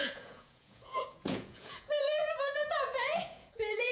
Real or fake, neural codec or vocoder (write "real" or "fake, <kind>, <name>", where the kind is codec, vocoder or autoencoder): fake, vocoder, Vocos